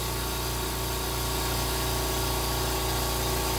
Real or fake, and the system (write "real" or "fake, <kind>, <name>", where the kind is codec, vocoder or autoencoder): real